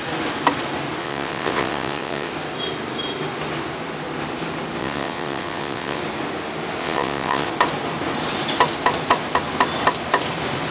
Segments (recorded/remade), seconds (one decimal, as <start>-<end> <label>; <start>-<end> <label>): 0.0-1.0 recorded; 1.0-2.3 remade; 2.3-4.8 recorded; 4.8-6.0 remade; 6.0-6.8 recorded; 6.8-7.5 remade; 7.5-10.7 recorded